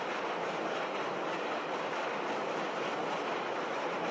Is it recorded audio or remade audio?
recorded